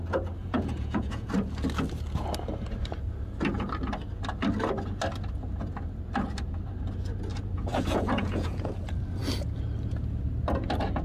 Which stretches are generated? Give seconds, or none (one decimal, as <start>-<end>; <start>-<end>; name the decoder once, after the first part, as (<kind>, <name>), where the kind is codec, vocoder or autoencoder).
0.4-1.3 (vocoder, Vocos); 7.3-8.7

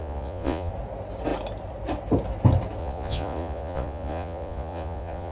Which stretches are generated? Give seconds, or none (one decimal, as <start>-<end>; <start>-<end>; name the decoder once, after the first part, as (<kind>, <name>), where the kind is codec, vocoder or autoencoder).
0.0-0.7 (vocoder, Vocos); 2.8-5.3